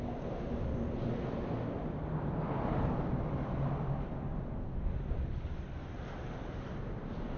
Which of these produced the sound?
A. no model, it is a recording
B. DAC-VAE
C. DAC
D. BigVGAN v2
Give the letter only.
A